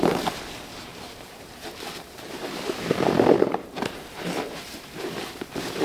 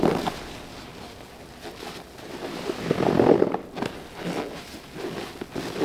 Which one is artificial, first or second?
first